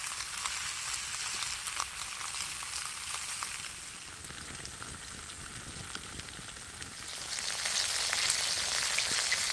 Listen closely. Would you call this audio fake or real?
real